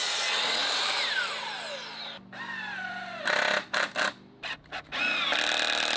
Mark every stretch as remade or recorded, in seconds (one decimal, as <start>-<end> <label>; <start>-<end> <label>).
0.0-0.6 recorded; 0.6-1.3 remade; 1.3-6.0 recorded